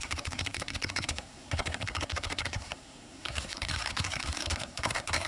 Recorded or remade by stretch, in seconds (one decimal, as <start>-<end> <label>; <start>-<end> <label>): 0.0-5.3 remade